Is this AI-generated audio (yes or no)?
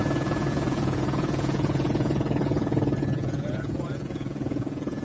yes